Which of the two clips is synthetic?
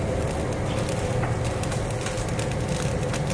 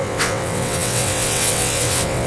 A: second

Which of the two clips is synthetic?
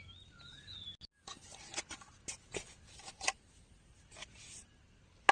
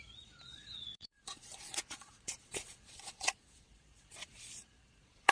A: second